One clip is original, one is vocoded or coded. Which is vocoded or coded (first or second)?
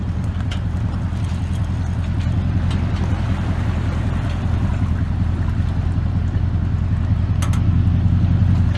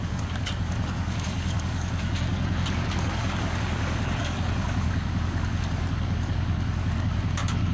second